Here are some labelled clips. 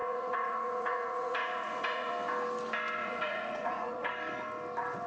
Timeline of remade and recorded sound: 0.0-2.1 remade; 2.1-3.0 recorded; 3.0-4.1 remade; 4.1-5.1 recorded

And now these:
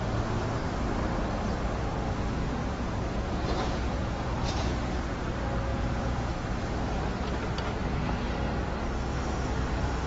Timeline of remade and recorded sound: 0.0-2.6 recorded; 2.6-5.2 remade; 5.2-5.7 recorded; 5.7-6.3 remade; 6.3-10.1 recorded

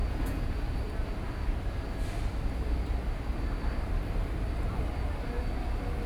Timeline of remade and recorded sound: 0.0-0.7 remade; 0.7-6.1 recorded

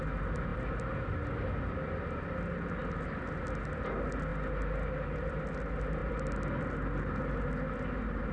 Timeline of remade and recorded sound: 0.0-8.3 recorded

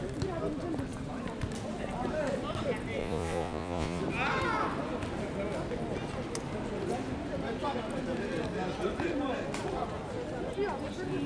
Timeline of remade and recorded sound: 0.0-3.0 recorded; 3.0-4.0 remade; 4.0-11.3 recorded

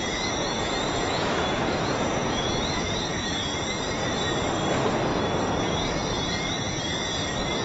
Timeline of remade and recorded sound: 0.0-0.4 recorded; 0.4-3.2 remade; 3.2-7.6 recorded

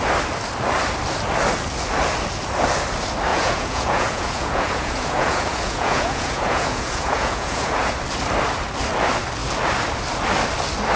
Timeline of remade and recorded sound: 0.0-3.3 recorded; 3.3-7.9 remade; 7.9-11.0 recorded